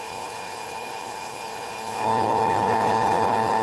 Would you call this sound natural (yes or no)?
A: no